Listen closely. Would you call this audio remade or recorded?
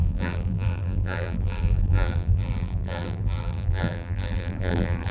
remade